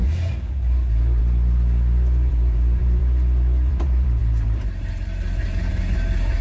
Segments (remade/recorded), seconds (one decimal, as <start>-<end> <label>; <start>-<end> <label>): 0.0-1.2 remade; 1.2-2.3 recorded; 2.3-3.0 remade; 3.0-3.7 recorded; 3.7-6.4 remade